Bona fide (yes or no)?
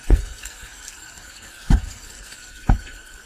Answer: no